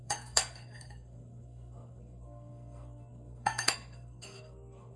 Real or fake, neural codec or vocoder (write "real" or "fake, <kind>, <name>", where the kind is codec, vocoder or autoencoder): fake, codec, SNAC